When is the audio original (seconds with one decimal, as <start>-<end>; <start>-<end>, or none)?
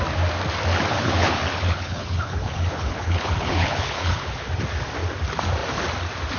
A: 0.0-0.9; 4.5-6.4